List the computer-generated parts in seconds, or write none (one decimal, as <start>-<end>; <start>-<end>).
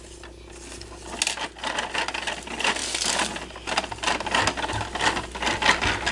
none